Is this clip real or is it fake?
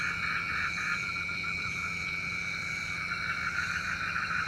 real